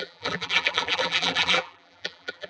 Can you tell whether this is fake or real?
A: fake